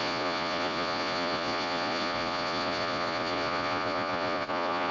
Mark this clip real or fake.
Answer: fake